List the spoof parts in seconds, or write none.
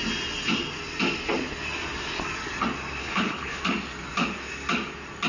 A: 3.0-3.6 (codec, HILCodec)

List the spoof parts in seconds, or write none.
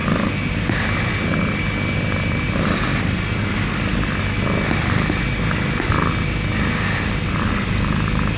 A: none